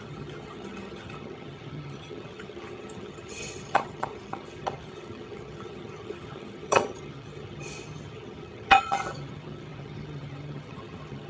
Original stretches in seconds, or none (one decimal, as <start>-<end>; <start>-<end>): none